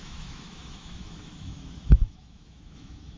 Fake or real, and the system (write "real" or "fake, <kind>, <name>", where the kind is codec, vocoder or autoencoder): fake, autoencoder, DAC-VAE